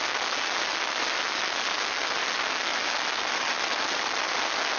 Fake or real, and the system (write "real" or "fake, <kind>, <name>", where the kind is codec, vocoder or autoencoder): real